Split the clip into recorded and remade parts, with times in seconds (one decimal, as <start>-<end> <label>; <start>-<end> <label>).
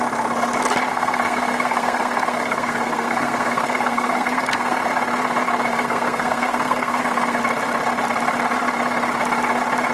0.0-0.9 recorded; 0.9-4.8 remade; 4.8-5.7 recorded; 5.7-7.4 remade; 7.4-9.9 recorded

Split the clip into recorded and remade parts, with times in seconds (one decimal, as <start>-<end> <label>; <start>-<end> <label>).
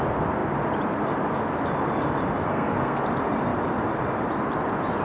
0.0-2.5 recorded; 2.5-3.0 remade; 3.0-5.0 recorded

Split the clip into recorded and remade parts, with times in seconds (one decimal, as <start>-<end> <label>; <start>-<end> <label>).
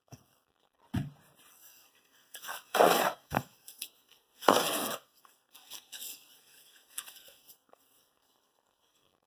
0.0-0.8 remade; 0.8-1.5 recorded; 1.5-9.3 remade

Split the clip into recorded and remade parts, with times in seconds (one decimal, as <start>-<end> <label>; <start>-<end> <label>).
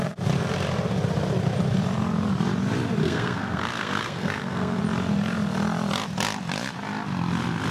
0.0-3.0 recorded; 3.0-4.8 remade; 4.8-7.7 recorded